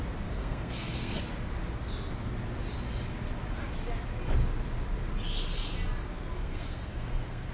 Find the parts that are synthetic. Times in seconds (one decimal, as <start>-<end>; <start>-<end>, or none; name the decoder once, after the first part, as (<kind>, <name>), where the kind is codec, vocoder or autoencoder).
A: 0.4-1.2 (codec, SNAC); 6.4-7.5